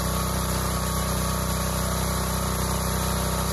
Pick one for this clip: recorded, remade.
remade